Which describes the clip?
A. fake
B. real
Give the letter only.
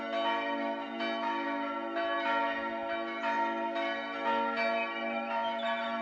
B